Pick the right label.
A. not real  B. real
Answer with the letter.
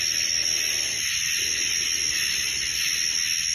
B